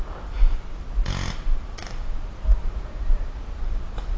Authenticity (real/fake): real